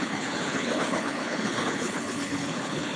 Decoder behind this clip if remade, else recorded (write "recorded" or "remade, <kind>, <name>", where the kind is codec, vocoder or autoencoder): remade, codec, HILCodec